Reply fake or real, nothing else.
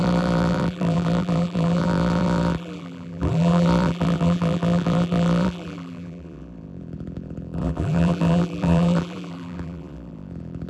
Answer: fake